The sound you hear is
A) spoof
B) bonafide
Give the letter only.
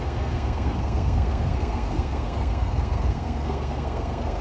A